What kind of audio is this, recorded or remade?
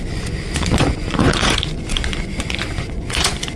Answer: remade